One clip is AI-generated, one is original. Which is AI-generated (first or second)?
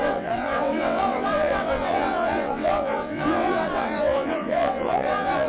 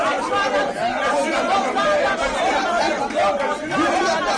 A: first